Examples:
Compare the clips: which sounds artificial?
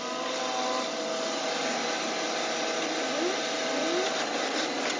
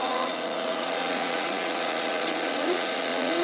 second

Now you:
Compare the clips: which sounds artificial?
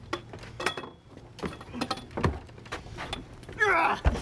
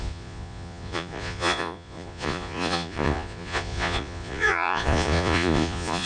second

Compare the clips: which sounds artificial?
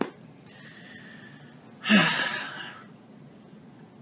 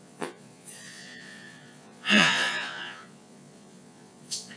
second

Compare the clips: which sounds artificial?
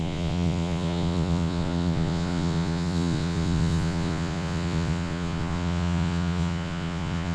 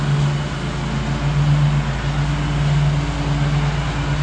first